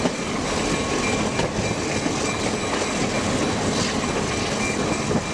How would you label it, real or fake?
real